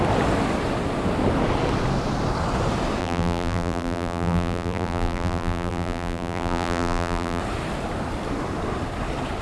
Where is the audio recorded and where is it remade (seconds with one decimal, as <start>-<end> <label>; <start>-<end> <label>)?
0.0-3.0 recorded; 3.0-7.4 remade; 7.4-9.4 recorded